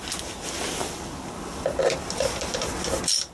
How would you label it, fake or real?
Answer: real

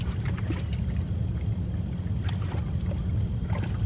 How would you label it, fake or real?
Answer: real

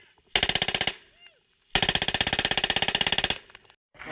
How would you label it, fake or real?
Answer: real